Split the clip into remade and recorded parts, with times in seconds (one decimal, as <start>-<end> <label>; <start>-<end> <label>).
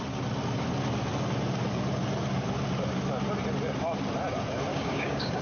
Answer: 0.0-4.7 recorded; 4.7-5.4 remade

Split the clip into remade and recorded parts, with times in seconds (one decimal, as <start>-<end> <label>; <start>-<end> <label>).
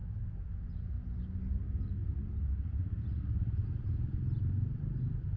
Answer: 0.0-5.4 recorded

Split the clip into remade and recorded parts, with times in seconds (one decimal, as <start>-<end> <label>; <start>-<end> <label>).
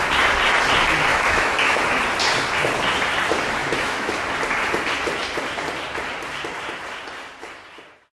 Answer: 0.0-1.1 recorded; 1.1-1.8 remade; 1.8-3.6 recorded; 3.6-4.1 remade; 4.1-8.1 recorded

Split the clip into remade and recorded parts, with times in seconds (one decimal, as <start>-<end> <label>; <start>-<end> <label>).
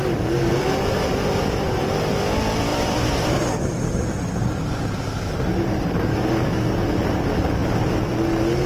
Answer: 0.0-0.5 recorded; 0.5-1.8 remade; 1.8-2.7 recorded; 2.7-6.3 remade; 6.3-8.7 recorded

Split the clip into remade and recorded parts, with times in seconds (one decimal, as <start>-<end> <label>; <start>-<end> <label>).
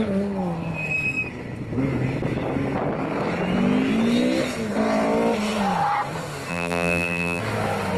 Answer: 0.0-6.5 recorded; 6.5-7.4 remade; 7.4-8.0 recorded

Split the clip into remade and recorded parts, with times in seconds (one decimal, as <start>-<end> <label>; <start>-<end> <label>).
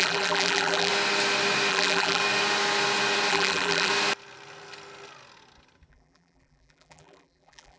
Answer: 0.0-0.9 remade; 0.9-1.7 recorded; 1.7-2.2 remade; 2.2-3.3 recorded; 3.3-3.9 remade; 3.9-5.9 recorded; 5.9-7.8 remade